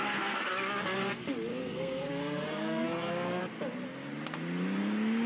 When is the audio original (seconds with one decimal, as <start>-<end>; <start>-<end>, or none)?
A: 0.5-1.5; 3.4-5.3